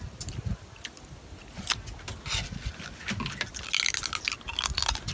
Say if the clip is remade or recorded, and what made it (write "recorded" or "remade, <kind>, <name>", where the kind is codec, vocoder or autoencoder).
recorded